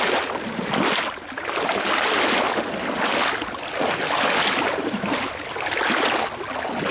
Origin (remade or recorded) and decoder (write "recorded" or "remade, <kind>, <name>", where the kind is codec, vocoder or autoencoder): recorded